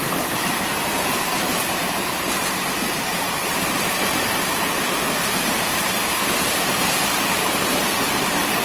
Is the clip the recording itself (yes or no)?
no